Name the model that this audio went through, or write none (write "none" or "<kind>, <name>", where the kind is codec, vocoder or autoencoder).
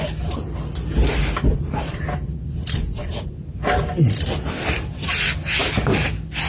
none